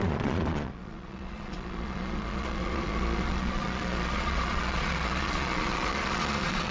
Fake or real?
fake